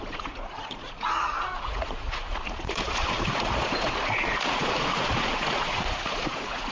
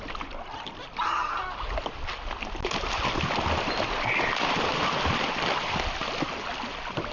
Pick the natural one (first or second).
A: second